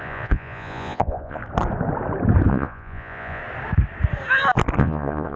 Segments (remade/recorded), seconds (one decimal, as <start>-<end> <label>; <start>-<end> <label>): 0.0-1.4 remade; 1.4-2.5 recorded; 2.5-3.4 remade; 3.4-4.8 recorded; 4.8-5.4 remade

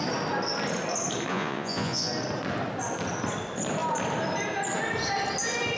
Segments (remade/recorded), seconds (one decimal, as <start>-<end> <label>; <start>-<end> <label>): 0.0-1.3 recorded; 1.3-2.1 remade; 2.1-5.8 recorded

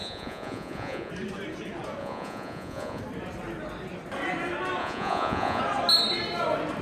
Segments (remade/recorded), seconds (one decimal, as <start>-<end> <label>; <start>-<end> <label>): 0.0-1.1 remade; 1.1-2.0 recorded; 2.0-3.0 remade; 3.0-4.8 recorded; 4.8-5.6 remade; 5.6-6.8 recorded

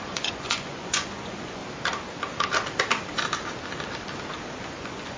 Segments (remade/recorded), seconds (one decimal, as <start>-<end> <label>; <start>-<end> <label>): 0.0-1.6 remade; 1.6-4.5 recorded; 4.5-5.2 remade

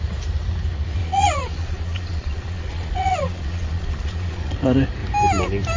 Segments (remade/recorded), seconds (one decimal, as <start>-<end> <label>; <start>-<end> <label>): 0.0-1.0 recorded; 1.0-4.5 remade; 4.5-5.8 recorded